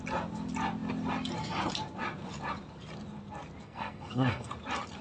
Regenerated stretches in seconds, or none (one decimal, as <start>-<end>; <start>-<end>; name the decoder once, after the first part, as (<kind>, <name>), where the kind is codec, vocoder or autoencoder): 3.6-4.5 (codec, SNAC)

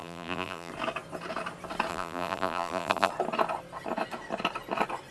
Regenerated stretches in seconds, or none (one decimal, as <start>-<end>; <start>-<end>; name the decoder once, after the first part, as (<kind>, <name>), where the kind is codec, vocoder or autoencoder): 0.0-0.7 (vocoder, BigVGAN v2); 1.9-3.1

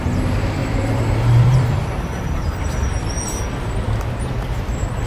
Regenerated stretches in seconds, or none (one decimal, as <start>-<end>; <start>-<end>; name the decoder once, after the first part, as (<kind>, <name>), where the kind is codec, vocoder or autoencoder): 0.0-5.1 (vocoder, BigVGAN v2)